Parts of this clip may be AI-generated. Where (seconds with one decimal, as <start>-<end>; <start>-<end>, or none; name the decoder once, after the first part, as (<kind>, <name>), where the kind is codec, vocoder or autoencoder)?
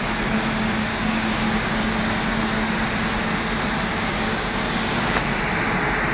0.9-1.8 (codec, DAC); 3.9-5.5